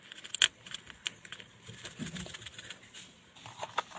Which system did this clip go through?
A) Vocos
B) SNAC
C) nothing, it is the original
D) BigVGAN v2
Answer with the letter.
C